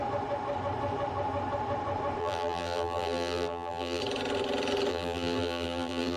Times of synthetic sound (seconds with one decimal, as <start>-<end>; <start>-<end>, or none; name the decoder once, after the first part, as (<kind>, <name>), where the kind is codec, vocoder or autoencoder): 2.2-4.0 (vocoder, BigVGAN v2); 4.9-6.2